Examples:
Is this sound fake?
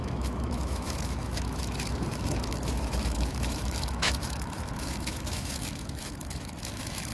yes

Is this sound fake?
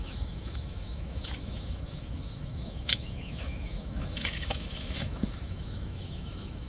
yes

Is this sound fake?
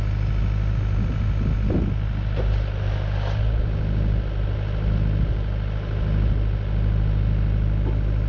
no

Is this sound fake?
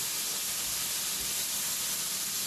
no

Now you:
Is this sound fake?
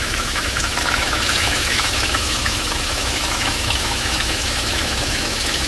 yes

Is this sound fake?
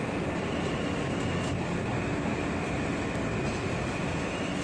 no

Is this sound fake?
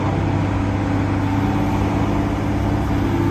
no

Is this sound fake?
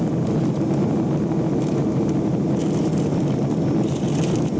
no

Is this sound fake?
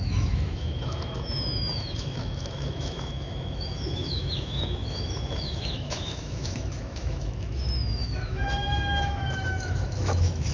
yes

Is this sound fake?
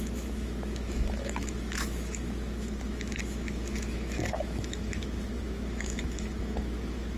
yes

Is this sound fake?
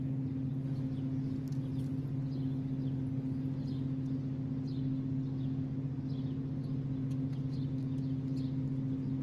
no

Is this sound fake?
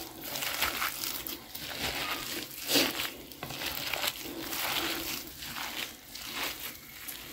no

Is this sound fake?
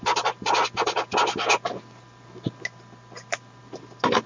no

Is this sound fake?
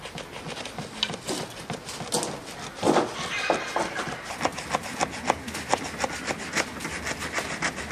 no